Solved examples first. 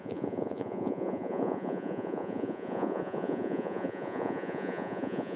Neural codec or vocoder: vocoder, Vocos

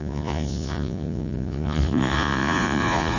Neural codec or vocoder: vocoder, Vocos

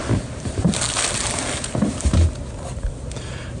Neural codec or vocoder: none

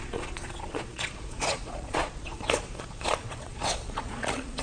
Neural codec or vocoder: vocoder, Vocos